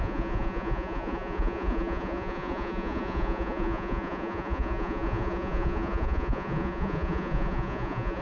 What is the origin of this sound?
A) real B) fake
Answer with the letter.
B